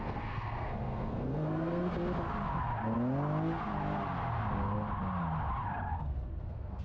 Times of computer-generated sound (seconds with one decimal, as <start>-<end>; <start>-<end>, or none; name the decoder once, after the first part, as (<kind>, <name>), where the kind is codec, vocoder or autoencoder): 0.0-1.9 (codec, SNAC); 5.9-6.8